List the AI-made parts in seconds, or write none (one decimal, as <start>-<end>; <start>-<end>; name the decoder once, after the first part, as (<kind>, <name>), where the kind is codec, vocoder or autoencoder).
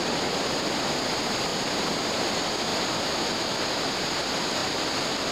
1.5-2.1 (vocoder, BigVGAN v2); 2.7-3.9; 4.6-5.3